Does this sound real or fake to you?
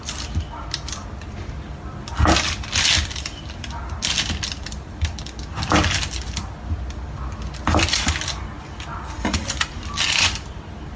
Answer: real